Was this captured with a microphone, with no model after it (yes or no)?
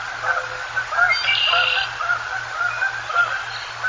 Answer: yes